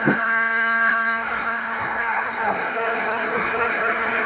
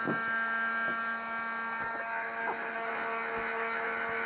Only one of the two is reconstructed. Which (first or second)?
first